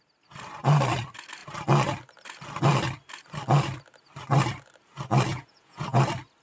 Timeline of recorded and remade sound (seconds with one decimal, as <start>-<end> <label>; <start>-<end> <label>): 0.0-5.3 recorded; 5.3-6.0 remade; 6.0-6.4 recorded